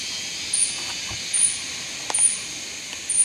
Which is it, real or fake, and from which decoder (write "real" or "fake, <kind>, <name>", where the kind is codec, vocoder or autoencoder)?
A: real